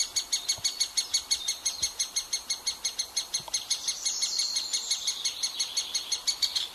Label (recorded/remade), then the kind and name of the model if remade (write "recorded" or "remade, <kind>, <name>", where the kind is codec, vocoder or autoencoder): recorded